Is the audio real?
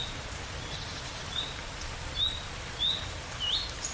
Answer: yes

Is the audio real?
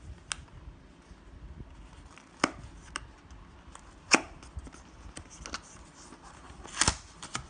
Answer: yes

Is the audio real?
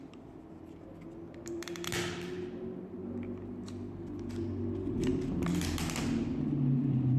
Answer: no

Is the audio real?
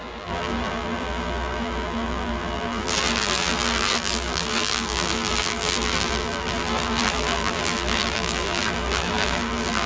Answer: no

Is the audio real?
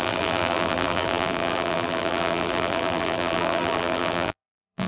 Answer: no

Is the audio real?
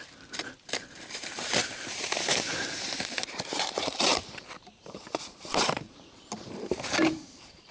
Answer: no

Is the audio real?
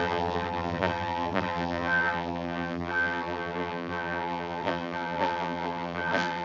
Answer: no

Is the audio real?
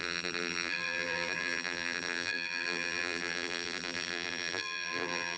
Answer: no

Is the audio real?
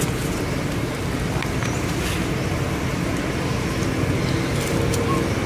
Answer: yes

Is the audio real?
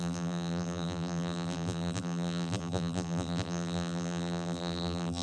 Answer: no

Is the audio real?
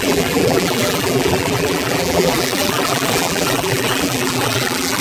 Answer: no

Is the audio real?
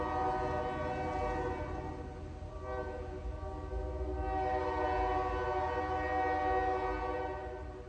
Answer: yes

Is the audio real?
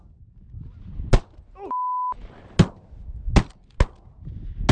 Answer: yes